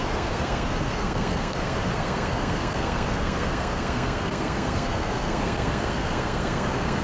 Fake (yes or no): yes